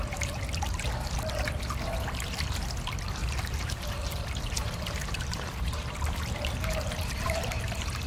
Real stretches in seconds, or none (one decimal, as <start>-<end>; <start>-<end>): 0.0-3.2